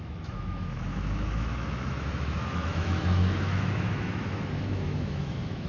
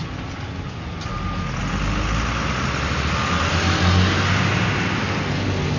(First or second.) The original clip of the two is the second